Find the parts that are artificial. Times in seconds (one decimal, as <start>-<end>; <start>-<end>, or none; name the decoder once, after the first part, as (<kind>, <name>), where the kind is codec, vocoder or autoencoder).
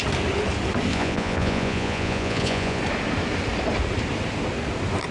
0.9-2.8 (vocoder, Vocos)